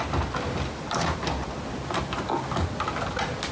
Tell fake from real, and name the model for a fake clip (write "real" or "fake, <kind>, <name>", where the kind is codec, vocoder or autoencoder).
real